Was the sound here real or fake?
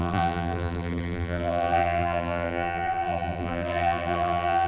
fake